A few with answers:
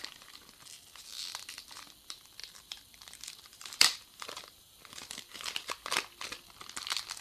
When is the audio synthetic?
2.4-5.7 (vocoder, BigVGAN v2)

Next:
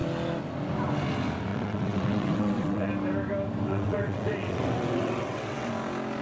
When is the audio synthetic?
1.5-2.9 (vocoder, WaveNeXt); 3.7-5.7

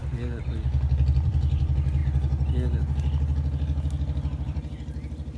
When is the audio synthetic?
none